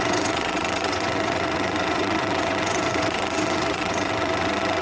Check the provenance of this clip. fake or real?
fake